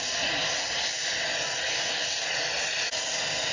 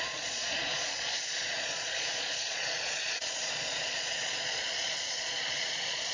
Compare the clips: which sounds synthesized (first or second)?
second